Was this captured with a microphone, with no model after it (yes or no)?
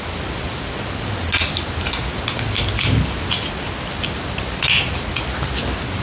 yes